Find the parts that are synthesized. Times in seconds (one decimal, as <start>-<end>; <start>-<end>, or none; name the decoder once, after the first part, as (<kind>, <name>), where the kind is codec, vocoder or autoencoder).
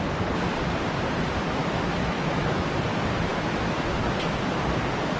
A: 1.6-2.7 (autoencoder, DAC-VAE)